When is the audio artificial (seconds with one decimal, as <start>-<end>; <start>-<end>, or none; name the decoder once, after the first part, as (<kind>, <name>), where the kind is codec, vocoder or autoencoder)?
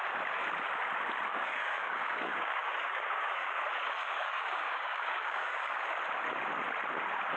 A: 1.3-3.6 (codec, DAC); 4.0-5.8